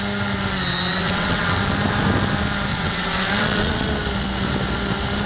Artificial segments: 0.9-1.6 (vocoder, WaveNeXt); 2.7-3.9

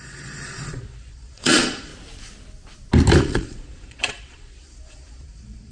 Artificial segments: 0.0-1.9 (vocoder, Vocos); 3.2-5.7

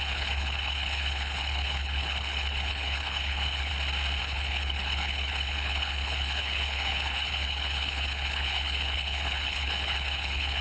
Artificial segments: 0.0-3.7 (codec, HILCodec); 4.2-10.6